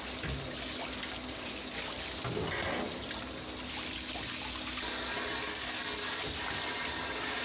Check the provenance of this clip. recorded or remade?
recorded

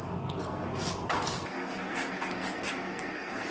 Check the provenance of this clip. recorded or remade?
remade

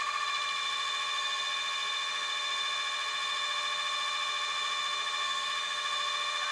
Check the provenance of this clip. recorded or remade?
recorded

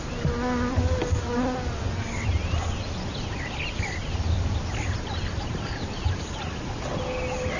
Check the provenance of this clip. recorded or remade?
recorded